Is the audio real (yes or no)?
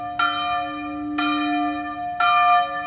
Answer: yes